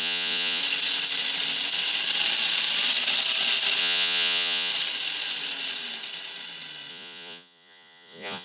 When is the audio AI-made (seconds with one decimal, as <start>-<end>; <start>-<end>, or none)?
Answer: 0.0-0.6; 3.8-4.7; 6.9-8.4

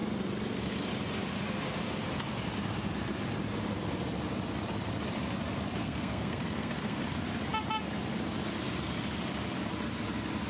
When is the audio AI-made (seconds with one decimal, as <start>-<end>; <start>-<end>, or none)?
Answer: 5.8-7.0